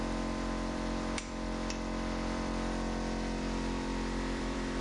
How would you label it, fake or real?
fake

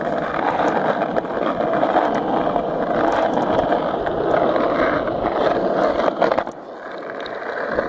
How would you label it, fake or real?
real